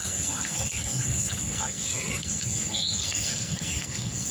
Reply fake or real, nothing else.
fake